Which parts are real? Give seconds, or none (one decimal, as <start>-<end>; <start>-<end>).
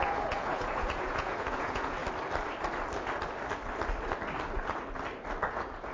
2.0-5.5